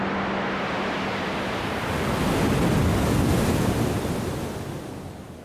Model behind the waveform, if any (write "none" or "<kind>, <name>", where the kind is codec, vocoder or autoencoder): none